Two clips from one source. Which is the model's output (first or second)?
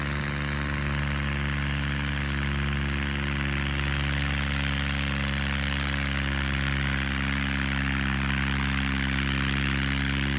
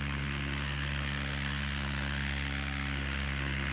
second